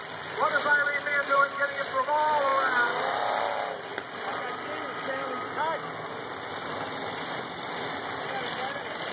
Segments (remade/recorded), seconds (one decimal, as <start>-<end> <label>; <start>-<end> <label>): 0.0-2.5 remade; 2.5-3.1 recorded; 3.1-3.9 remade; 3.9-6.2 recorded; 6.2-9.1 remade